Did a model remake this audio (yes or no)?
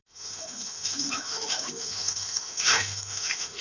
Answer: yes